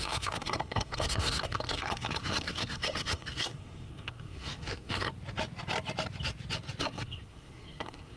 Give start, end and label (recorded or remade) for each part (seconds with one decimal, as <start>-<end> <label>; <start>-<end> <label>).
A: 0.0-5.1 remade; 5.1-6.8 recorded; 6.8-8.2 remade